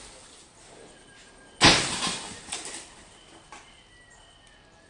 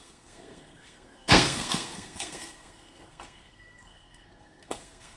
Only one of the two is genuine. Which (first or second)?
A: first